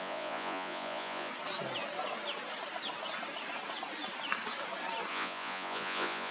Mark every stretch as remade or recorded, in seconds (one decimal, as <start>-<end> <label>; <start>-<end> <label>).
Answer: 0.0-1.3 remade; 1.3-5.1 recorded; 5.1-6.3 remade